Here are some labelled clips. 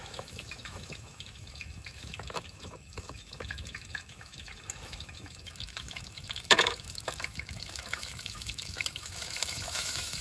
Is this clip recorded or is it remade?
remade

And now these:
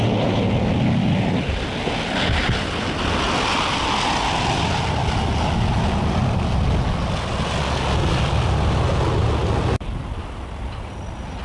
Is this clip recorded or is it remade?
recorded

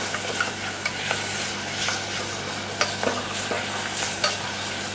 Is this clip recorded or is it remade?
recorded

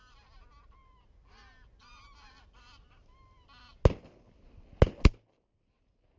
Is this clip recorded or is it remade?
recorded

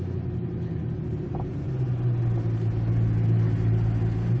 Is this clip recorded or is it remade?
recorded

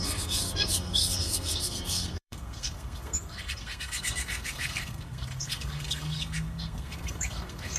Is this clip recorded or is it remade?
remade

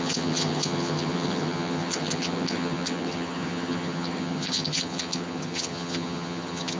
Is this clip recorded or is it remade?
remade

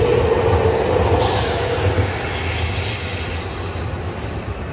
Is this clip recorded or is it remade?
recorded